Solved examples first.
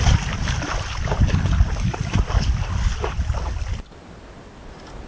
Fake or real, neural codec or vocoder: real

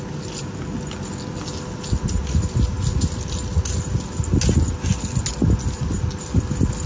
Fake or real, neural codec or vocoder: real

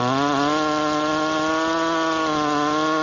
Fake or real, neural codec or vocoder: real